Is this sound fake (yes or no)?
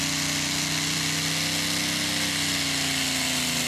no